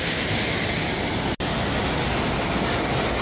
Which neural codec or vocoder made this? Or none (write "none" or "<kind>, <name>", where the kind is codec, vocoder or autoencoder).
none